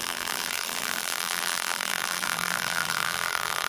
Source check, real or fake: fake